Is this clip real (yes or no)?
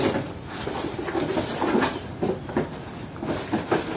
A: yes